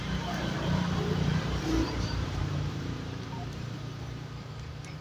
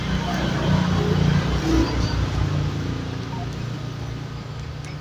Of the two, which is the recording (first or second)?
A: second